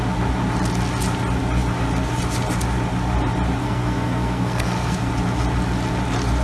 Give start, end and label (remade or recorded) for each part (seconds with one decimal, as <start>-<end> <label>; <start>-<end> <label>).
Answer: 0.0-3.6 recorded; 3.6-5.1 remade; 5.1-6.4 recorded